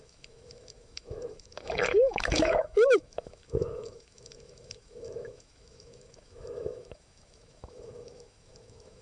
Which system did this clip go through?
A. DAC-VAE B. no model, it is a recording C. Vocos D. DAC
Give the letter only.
A